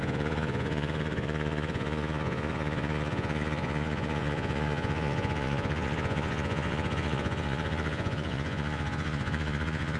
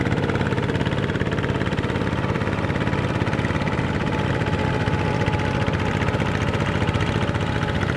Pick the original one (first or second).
second